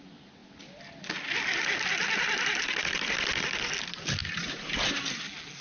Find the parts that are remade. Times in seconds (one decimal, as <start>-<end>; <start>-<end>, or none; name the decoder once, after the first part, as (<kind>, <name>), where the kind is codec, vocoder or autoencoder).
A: none